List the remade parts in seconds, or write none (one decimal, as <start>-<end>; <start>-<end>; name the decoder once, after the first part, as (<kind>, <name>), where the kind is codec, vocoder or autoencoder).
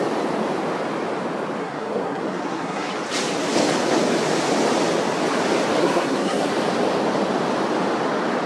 1.6-2.9 (codec, SNAC); 5.8-6.5